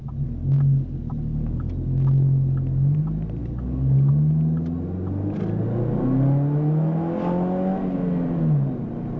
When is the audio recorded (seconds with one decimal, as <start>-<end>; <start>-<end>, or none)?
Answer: 0.0-0.4; 1.7-3.4; 4.1-9.2